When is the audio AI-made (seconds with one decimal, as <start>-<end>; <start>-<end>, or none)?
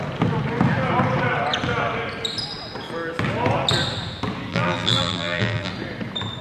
4.5-5.7